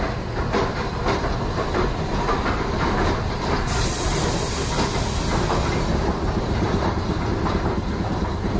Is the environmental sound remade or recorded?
recorded